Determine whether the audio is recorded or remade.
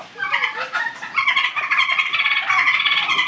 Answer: recorded